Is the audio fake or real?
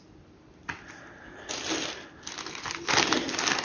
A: real